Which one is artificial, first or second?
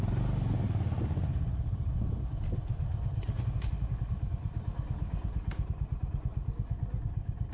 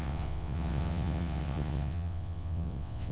second